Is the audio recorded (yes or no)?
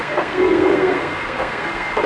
no